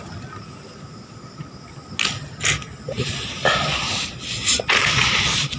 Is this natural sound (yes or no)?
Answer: yes